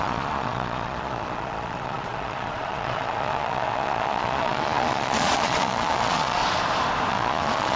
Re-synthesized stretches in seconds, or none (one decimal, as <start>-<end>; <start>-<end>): 0.0-6.4; 7.1-7.8